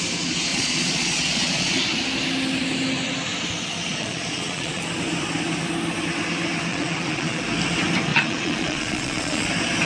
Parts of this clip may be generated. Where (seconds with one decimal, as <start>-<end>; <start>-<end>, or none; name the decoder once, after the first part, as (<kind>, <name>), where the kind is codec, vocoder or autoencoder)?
0.5-1.8 (vocoder, Vocos); 3.9-4.8; 6.7-7.4; 8.1-9.5